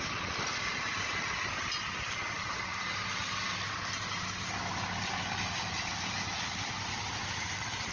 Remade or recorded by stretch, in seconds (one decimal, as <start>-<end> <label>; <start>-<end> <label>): 0.0-7.9 recorded